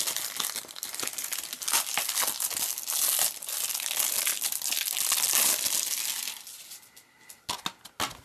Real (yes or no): yes